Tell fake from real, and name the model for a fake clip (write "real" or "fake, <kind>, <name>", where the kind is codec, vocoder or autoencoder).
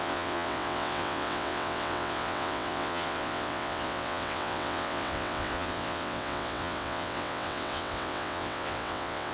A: fake, vocoder, WaveNeXt